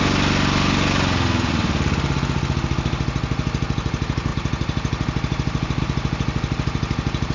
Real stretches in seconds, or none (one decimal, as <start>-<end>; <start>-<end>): 0.0-7.3